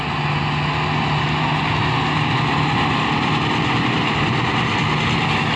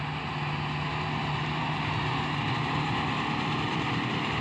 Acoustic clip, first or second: first